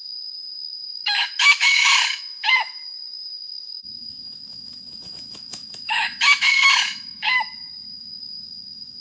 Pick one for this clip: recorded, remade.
remade